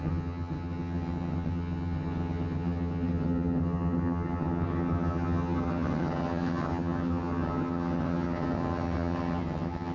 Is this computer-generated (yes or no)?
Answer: yes